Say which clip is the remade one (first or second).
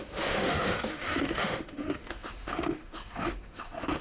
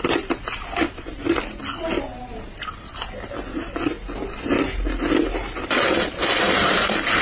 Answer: first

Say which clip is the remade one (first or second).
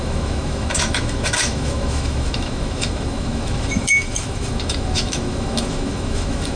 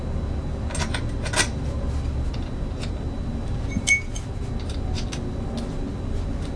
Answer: first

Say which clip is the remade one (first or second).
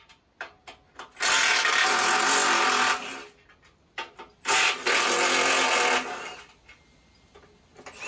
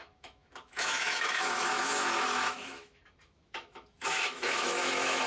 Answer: second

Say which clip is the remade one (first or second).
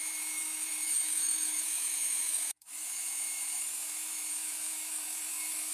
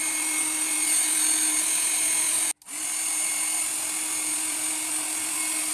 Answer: first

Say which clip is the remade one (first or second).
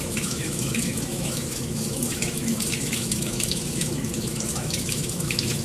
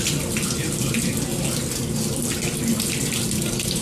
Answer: first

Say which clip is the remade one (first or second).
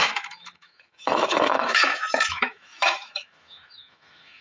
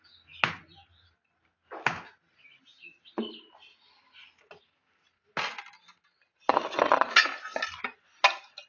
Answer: first